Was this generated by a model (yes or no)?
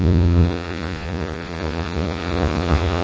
yes